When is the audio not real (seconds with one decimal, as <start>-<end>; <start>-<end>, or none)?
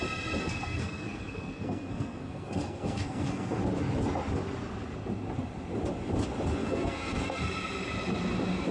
0.4-3.6; 6.6-7.4